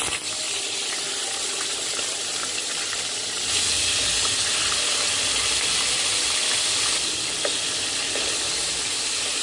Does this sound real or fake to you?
real